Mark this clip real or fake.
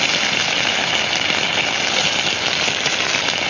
real